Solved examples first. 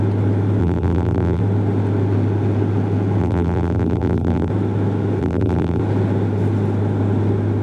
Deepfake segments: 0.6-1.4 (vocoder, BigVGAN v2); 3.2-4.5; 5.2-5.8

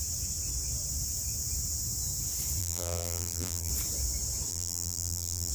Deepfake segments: 2.6-3.7 (vocoder, BigVGAN v2); 4.5-5.5

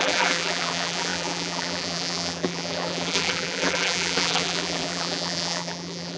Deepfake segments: 0.0-6.2 (vocoder, BigVGAN v2)

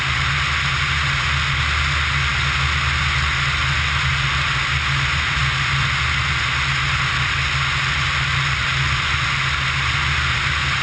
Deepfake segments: none

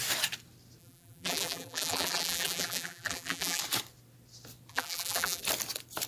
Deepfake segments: 0.8-3.6 (vocoder, BigVGAN v2); 4.7-5.4

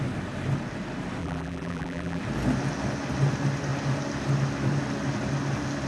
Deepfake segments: 1.2-2.2 (vocoder, BigVGAN v2)

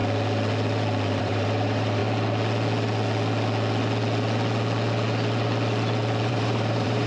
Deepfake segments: 1.2-2.0 (vocoder, BigVGAN v2); 6.3-7.1

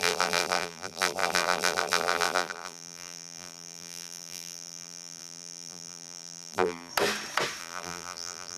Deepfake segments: 0.0-6.9 (vocoder, BigVGAN v2); 7.6-8.6